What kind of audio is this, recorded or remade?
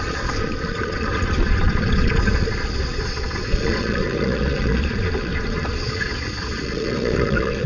remade